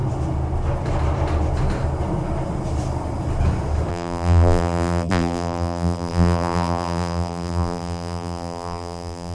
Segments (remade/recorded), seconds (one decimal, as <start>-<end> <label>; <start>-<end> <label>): 0.0-3.9 recorded; 3.9-9.3 remade